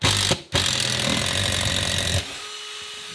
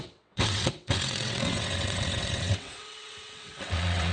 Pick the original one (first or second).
first